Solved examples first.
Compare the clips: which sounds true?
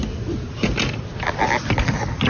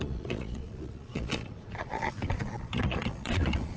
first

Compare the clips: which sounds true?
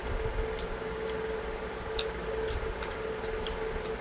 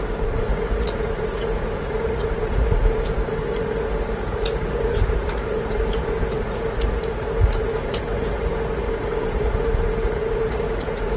first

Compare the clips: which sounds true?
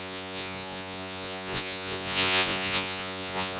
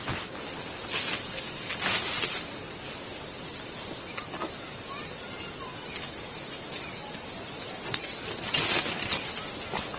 second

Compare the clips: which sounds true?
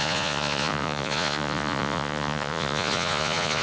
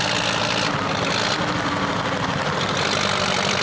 second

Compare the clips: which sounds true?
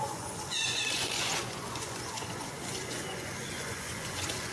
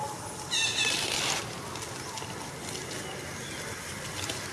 second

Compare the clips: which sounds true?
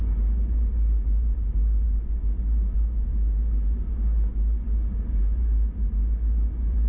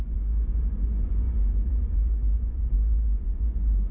first